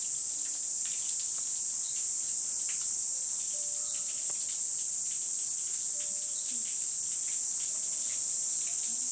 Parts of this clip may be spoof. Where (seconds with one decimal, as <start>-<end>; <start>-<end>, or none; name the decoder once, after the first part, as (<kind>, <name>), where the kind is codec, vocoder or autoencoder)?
none